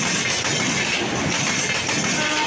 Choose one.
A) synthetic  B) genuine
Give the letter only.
B